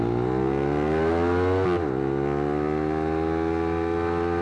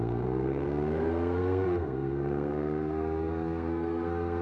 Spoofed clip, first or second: second